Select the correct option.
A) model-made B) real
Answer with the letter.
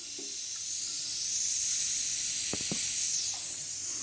B